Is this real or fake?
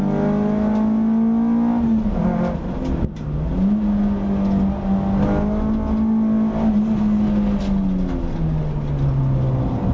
real